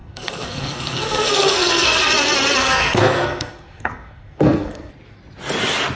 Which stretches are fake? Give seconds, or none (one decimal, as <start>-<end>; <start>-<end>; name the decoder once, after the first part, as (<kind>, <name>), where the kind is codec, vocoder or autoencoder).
0.0-2.1 (codec, SNAC); 2.6-4.9